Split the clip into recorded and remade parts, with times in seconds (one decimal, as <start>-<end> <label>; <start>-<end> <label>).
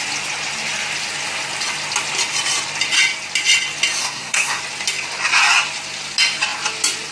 0.0-4.0 recorded; 4.0-4.6 remade; 4.6-7.1 recorded